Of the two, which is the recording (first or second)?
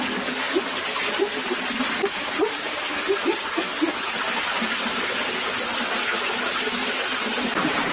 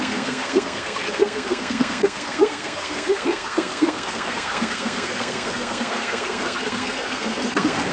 first